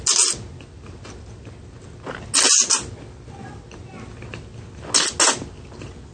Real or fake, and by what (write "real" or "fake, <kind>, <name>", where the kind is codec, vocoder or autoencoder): real